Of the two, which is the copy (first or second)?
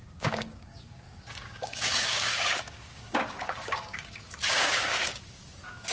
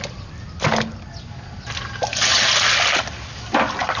first